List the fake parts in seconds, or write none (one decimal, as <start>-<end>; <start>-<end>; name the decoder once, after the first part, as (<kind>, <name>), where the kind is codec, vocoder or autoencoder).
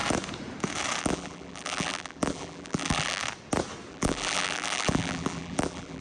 1.0-3.2 (vocoder, BigVGAN v2); 3.9-6.0